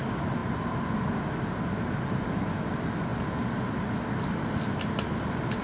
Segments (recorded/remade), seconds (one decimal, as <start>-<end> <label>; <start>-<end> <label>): 0.0-5.6 recorded